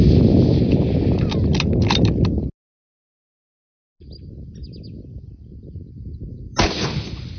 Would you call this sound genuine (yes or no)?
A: yes